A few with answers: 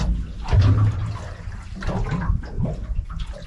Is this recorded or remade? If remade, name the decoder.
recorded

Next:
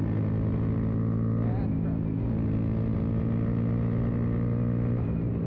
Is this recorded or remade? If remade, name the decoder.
recorded